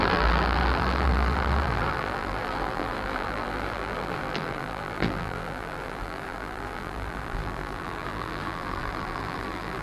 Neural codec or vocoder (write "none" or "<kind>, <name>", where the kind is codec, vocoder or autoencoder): vocoder, BigVGAN v2